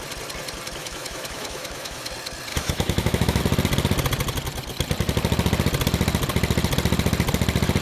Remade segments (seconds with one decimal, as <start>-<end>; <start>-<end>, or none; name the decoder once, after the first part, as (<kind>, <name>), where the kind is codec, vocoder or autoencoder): 0.8-2.1 (autoencoder, DAC-VAE); 2.5-3.4